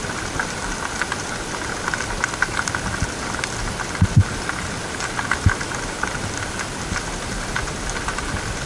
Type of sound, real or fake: real